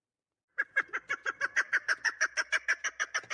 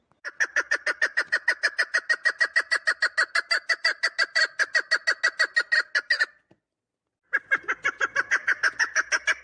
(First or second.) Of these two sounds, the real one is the second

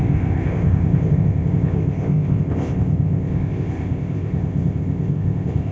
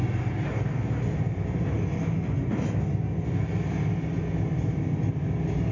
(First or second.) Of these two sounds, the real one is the second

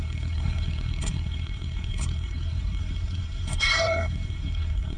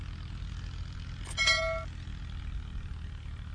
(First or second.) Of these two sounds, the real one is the second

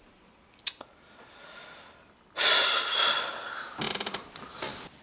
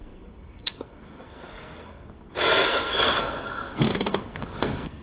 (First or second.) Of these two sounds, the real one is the first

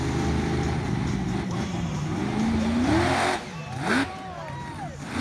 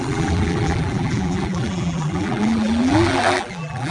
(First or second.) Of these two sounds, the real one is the first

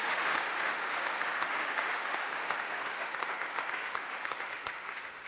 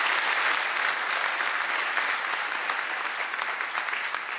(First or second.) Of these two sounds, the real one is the second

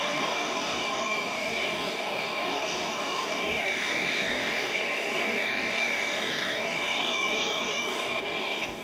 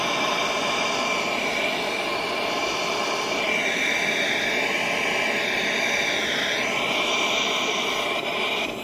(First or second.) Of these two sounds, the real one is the second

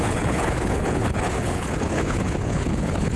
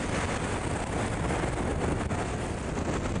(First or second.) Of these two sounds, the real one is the second